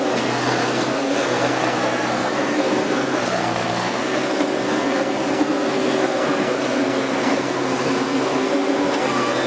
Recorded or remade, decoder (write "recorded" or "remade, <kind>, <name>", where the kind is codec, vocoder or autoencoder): remade, codec, SNAC